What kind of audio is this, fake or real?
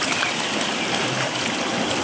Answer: real